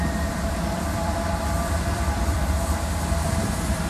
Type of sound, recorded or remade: remade